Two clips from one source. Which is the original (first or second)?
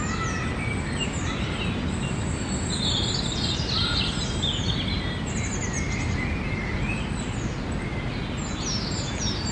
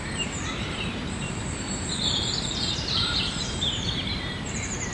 first